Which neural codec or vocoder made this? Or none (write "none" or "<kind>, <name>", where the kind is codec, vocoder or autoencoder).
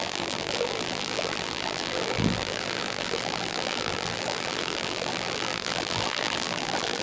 vocoder, BigVGAN v2